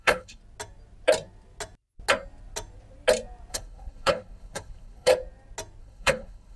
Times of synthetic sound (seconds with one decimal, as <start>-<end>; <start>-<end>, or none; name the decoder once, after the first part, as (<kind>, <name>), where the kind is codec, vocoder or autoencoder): 0.0-0.4 (codec, HILCodec); 3.5-5.1; 5.8-6.6